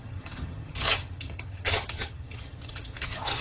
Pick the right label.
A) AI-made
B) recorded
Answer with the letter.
A